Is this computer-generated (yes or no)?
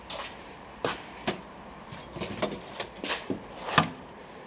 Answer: no